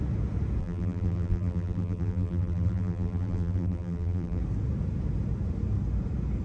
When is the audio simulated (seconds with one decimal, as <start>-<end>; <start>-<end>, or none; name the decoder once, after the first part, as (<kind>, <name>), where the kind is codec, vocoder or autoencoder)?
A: 0.6-4.4 (vocoder, BigVGAN v2)